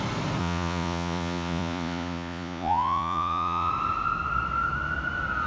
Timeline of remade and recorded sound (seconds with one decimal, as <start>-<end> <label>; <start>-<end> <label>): 0.0-0.4 recorded; 0.4-3.7 remade; 3.7-5.5 recorded